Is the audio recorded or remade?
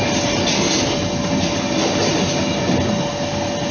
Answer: recorded